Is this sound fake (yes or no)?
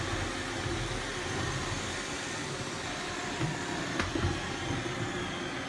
no